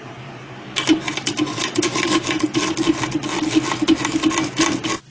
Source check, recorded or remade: recorded